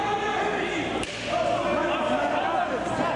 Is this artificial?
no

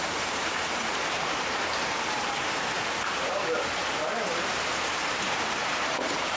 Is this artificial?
yes